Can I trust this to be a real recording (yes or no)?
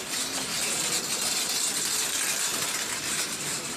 yes